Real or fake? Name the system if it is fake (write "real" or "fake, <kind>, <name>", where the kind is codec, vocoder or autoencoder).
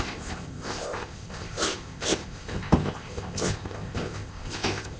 fake, codec, ZipCodec